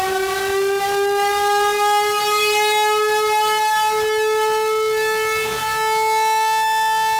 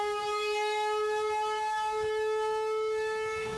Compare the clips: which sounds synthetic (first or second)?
second